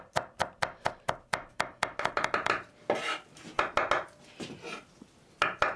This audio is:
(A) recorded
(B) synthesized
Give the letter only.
A